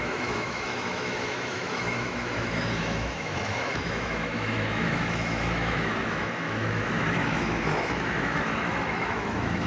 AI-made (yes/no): yes